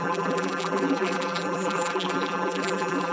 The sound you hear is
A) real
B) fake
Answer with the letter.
B